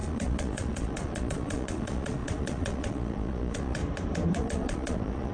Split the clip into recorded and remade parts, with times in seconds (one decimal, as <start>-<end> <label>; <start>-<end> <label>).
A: 0.0-3.8 remade; 3.8-4.4 recorded; 4.4-5.3 remade

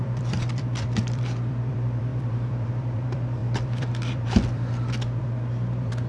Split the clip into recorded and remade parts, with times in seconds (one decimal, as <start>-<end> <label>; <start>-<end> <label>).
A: 0.0-6.1 remade

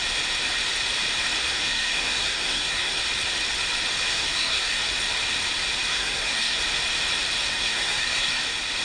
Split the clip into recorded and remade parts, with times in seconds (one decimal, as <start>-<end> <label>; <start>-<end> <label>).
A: 0.0-1.5 recorded; 1.5-3.0 remade; 3.0-4.1 recorded; 4.1-4.8 remade; 4.8-5.9 recorded; 5.9-6.6 remade; 6.6-7.5 recorded; 7.5-8.4 remade; 8.4-8.8 recorded

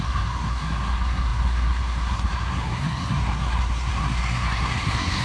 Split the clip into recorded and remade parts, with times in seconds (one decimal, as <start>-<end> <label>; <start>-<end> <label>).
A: 0.0-5.2 remade

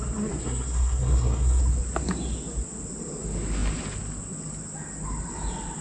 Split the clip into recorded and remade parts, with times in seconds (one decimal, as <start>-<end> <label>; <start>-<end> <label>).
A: 0.0-0.4 recorded; 0.4-1.6 remade; 1.6-5.8 recorded

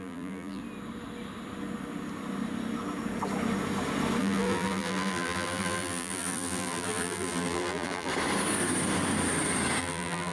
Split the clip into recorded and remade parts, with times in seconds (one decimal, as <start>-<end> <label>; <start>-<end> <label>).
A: 0.0-0.6 remade; 0.6-4.2 recorded; 4.2-8.1 remade; 8.1-9.8 recorded; 9.8-10.3 remade